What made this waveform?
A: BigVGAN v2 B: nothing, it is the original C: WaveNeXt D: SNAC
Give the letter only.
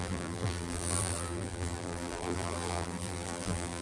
A